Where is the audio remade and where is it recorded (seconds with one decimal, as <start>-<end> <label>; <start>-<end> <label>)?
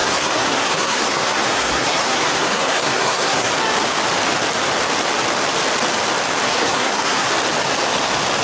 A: 0.0-3.5 remade; 3.5-6.5 recorded; 6.5-7.3 remade; 7.3-8.4 recorded